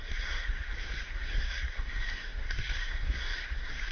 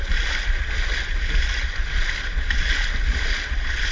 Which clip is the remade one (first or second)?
first